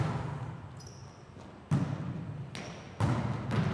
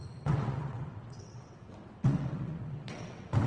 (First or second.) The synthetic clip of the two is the second